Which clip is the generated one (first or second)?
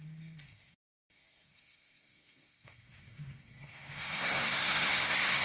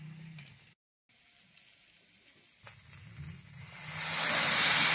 first